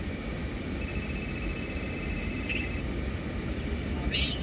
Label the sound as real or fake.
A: real